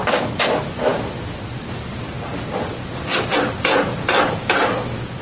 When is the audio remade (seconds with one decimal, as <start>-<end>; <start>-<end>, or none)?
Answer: none